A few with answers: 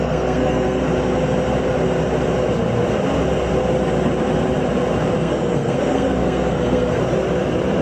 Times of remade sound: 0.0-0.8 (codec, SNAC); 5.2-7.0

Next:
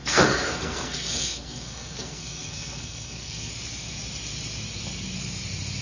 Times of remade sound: 0.0-3.5 (codec, SNAC)

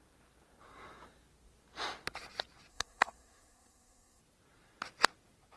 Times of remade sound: 2.7-4.2 (codec, SNAC)

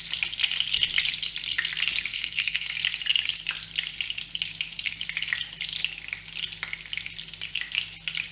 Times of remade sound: 2.1-2.7 (codec, SNAC)